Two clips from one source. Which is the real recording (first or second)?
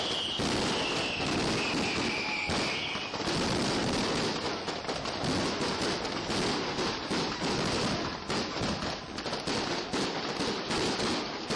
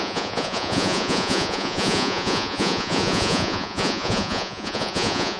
first